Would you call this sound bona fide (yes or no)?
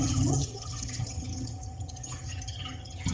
no